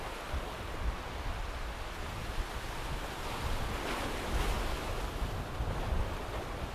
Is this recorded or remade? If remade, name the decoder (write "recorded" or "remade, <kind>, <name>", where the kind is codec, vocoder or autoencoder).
recorded